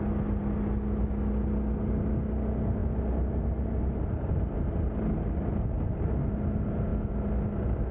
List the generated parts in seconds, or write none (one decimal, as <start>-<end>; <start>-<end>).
none